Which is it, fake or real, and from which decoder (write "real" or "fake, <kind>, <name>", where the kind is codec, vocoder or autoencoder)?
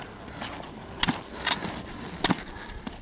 real